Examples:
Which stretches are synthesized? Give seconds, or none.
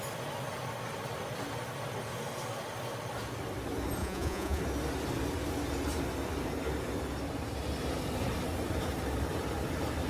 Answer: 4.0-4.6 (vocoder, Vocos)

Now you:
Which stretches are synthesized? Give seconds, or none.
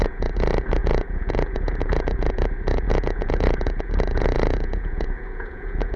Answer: 0.0-6.0 (vocoder, Vocos)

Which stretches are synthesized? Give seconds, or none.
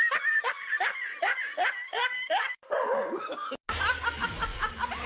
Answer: none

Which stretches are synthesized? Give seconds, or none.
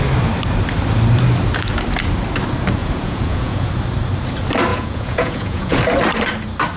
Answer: 2.8-3.7 (vocoder, Vocos); 4.7-5.8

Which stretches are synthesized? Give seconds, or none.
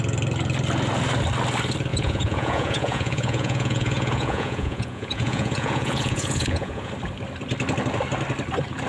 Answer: 1.9-6.9 (vocoder, Vocos)